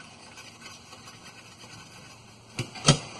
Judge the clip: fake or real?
real